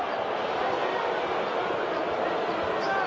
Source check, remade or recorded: recorded